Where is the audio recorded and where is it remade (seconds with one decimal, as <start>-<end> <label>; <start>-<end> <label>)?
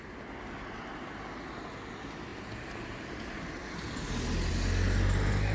0.0-5.5 recorded